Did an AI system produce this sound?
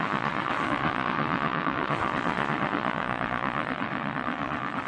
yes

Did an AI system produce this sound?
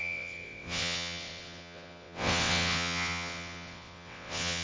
yes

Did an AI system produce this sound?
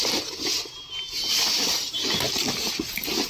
no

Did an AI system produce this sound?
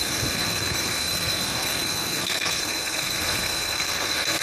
yes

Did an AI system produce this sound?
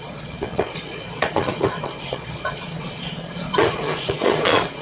yes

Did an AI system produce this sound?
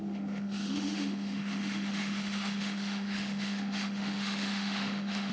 yes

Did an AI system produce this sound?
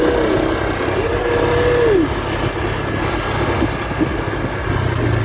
no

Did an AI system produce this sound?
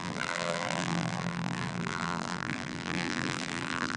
yes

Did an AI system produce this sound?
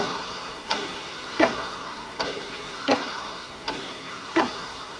yes